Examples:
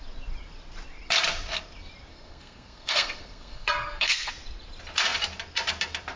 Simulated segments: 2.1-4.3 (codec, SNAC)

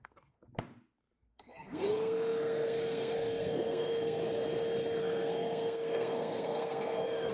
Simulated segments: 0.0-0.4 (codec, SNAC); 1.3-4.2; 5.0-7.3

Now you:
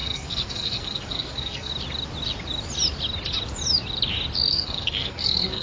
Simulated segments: 0.0-1.7 (codec, SNAC); 4.5-5.6